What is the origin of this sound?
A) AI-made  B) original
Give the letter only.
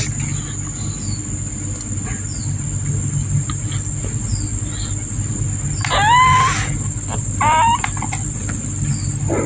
B